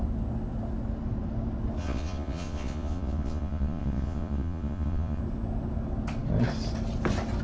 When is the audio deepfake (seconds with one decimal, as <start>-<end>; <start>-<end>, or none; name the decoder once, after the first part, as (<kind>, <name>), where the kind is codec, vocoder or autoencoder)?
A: 1.8-5.2 (vocoder, Vocos)

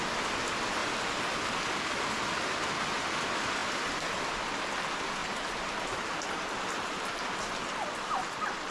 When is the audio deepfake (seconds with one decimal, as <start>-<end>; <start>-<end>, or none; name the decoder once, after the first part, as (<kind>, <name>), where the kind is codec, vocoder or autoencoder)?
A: none

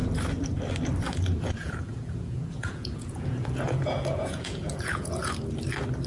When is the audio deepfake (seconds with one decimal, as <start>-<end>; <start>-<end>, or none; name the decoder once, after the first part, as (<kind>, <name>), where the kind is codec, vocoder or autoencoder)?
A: 1.6-5.3 (vocoder, Vocos)

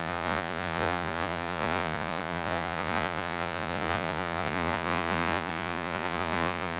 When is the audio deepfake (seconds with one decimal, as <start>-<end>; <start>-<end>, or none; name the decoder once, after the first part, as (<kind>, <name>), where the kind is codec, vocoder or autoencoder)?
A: 0.0-6.8 (vocoder, Vocos)

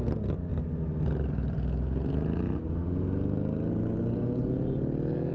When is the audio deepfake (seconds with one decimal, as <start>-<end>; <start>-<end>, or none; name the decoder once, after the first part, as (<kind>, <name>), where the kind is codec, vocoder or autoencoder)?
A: none

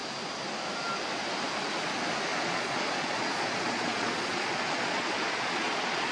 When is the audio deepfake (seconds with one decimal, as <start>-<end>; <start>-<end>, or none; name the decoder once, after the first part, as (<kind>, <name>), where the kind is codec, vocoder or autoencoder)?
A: 2.4-6.1 (vocoder, Vocos)